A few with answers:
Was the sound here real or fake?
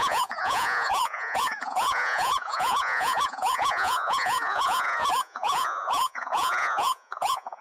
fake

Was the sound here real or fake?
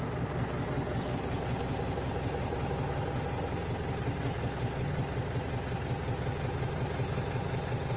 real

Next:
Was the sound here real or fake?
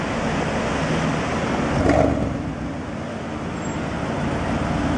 real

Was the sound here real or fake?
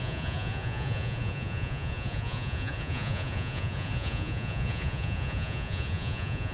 fake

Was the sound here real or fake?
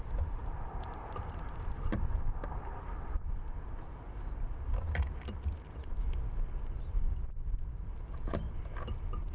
real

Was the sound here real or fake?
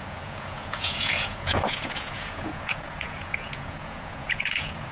fake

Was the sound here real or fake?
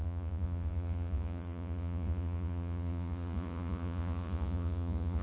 fake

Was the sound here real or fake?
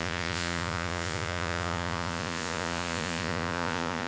fake